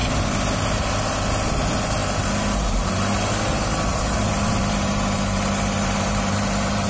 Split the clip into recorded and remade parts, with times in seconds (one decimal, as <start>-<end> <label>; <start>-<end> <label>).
0.0-2.0 recorded; 2.0-2.9 remade; 2.9-3.9 recorded; 3.9-6.9 remade